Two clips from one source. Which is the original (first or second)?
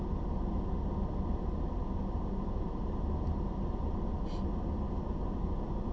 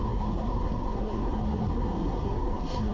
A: first